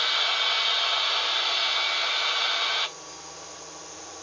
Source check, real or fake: real